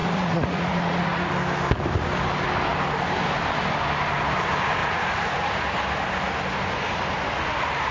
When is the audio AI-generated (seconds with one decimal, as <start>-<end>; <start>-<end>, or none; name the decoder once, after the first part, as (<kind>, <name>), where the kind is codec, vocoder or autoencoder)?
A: 0.0-1.3 (vocoder, Vocos); 4.8-5.5